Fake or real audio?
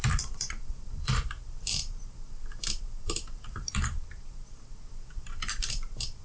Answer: fake